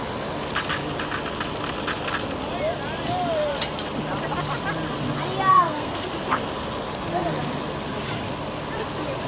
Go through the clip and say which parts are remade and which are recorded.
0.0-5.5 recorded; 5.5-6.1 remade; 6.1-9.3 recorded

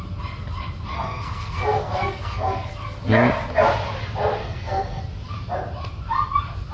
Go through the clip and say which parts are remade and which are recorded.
0.0-0.9 recorded; 0.9-2.7 remade; 2.7-4.4 recorded; 4.4-5.0 remade; 5.0-6.7 recorded

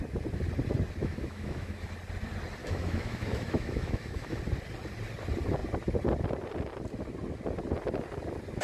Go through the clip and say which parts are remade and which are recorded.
0.0-1.0 recorded; 1.0-1.9 remade; 1.9-2.6 recorded; 2.6-4.4 remade; 4.4-8.6 recorded

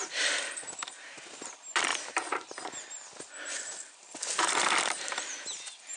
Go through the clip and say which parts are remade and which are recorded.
0.0-1.9 recorded; 1.9-2.7 remade; 2.7-6.0 recorded

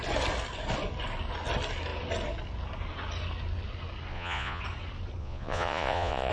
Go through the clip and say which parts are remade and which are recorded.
0.0-4.1 recorded; 4.1-4.6 remade; 4.6-5.2 recorded; 5.2-6.3 remade

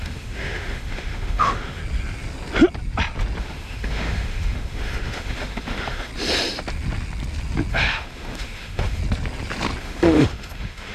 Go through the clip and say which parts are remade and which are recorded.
0.0-1.8 remade; 1.8-3.4 recorded; 3.4-6.1 remade; 6.1-7.7 recorded; 7.7-9.0 remade; 9.0-9.8 recorded; 9.8-10.9 remade